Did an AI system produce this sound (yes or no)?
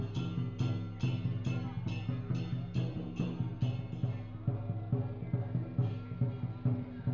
no